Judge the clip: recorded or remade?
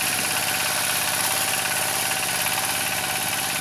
recorded